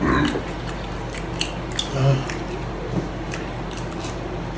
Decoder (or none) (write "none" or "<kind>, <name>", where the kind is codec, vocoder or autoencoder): none